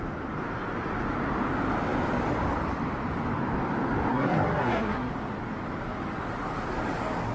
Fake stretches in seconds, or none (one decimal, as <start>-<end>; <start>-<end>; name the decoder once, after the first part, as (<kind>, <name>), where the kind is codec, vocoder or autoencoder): 4.1-5.1 (codec, SNAC)